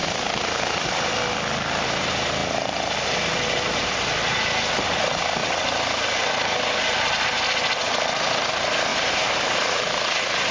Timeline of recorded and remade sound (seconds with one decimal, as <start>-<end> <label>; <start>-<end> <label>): 0.0-1.1 remade; 1.1-8.9 recorded; 8.9-10.5 remade